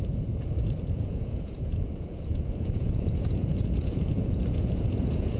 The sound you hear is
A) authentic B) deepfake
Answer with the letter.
B